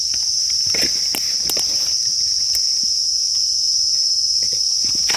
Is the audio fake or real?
real